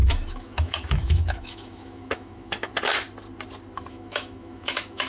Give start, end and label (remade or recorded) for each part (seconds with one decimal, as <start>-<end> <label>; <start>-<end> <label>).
0.0-2.7 remade; 2.7-3.9 recorded; 3.9-5.1 remade